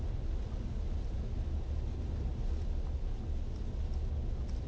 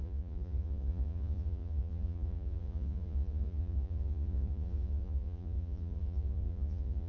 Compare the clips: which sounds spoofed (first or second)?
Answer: second